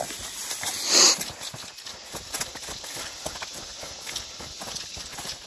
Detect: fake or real real